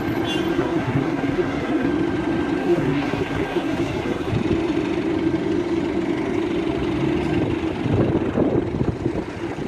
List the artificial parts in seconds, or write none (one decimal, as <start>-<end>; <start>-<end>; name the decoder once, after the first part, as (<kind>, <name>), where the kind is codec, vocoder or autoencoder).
0.5-1.9 (codec, SNAC); 2.6-4.3